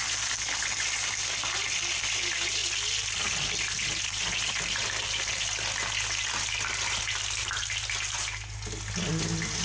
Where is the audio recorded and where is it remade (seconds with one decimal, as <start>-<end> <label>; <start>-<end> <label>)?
0.0-9.6 recorded